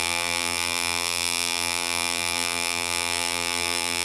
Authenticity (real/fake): fake